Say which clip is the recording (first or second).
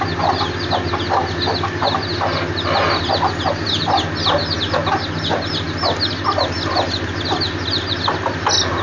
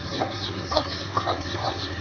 first